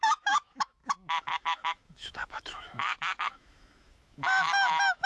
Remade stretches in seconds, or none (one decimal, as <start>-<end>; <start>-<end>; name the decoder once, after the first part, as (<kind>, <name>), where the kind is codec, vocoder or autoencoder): 0.0-5.1 (autoencoder, DAC-VAE)